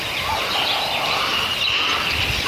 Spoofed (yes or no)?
no